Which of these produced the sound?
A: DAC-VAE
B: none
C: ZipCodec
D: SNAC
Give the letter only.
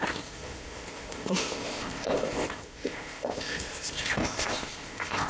C